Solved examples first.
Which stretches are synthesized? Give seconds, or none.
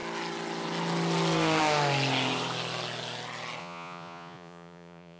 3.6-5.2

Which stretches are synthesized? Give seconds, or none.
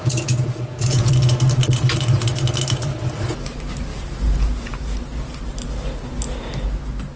0.0-1.1